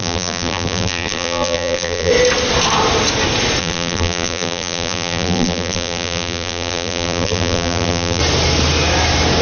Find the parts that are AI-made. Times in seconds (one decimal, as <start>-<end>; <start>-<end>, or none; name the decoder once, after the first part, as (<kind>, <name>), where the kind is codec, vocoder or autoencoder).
0.0-2.1 (vocoder, BigVGAN v2); 3.6-8.2